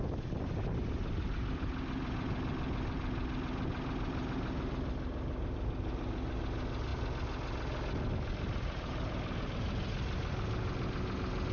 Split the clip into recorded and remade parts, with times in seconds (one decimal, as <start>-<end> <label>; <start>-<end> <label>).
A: 0.0-11.5 recorded